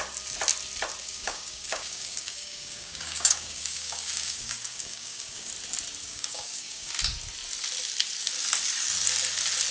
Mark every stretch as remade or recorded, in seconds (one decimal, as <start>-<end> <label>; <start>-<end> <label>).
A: 0.0-1.0 recorded; 1.0-5.5 remade; 5.5-6.0 recorded; 6.0-6.9 remade; 6.9-9.7 recorded